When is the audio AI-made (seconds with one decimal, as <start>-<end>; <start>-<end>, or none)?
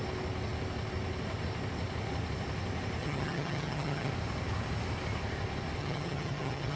3.0-4.1; 5.8-6.8